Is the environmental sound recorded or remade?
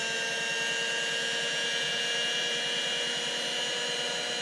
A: recorded